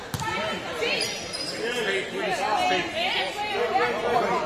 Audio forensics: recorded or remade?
recorded